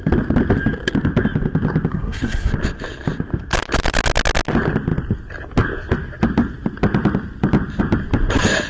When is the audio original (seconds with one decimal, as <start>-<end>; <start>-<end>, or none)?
0.0-1.9; 2.5-8.7